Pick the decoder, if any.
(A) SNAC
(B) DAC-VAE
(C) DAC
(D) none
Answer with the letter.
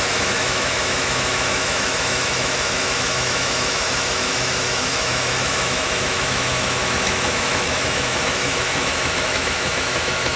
B